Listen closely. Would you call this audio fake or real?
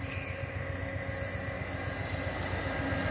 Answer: real